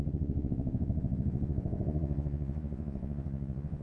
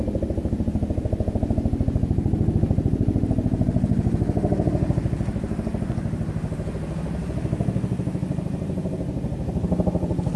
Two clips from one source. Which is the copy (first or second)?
first